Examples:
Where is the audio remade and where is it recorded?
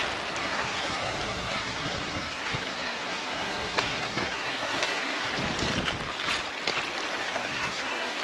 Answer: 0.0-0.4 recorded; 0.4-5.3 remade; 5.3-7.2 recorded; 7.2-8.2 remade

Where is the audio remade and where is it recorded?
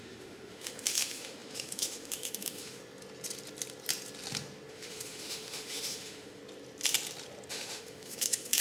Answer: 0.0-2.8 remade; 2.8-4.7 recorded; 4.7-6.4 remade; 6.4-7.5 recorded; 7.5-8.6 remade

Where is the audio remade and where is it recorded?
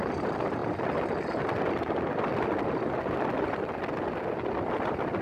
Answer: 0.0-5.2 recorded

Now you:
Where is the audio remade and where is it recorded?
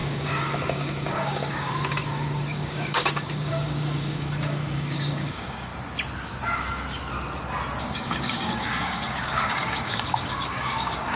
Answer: 0.0-5.7 remade; 5.7-7.8 recorded; 7.8-11.2 remade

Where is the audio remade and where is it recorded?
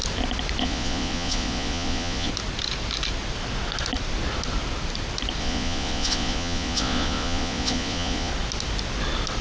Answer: 0.0-0.6 recorded; 0.6-2.3 remade; 2.3-5.4 recorded; 5.4-8.3 remade; 8.3-9.4 recorded